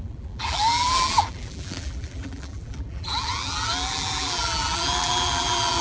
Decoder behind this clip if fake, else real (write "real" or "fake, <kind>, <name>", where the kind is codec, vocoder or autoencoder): fake, vocoder, BigVGAN v2